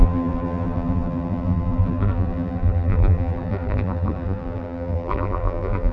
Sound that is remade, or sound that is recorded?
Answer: remade